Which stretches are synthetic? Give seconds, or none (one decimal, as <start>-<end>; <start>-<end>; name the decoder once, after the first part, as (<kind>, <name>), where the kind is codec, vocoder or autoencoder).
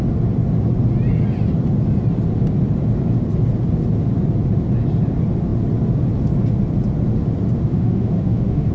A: 7.7-8.7 (autoencoder, DAC-VAE)